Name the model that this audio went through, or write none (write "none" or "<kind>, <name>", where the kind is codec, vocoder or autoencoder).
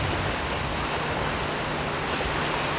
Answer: none